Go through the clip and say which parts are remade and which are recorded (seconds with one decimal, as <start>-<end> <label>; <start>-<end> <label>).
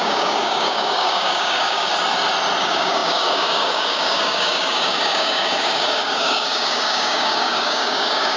0.0-1.9 remade; 1.9-2.6 recorded; 2.6-8.4 remade